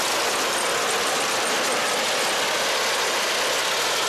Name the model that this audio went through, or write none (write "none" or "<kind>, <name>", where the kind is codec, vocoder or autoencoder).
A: none